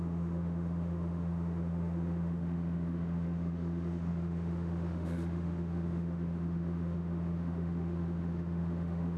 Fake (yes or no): yes